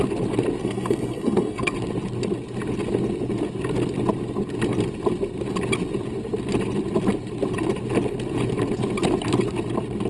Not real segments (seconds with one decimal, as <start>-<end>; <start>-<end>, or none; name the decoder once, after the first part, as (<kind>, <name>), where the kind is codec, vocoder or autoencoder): 0.6-1.7 (codec, SNAC)